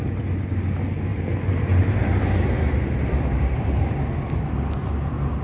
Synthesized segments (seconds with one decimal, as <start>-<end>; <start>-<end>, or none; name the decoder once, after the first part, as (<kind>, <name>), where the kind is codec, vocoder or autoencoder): 1.1-3.8 (vocoder, BigVGAN v2)